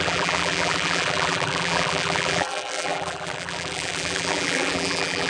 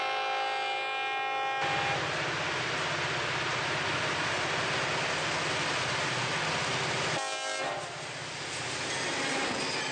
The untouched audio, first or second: second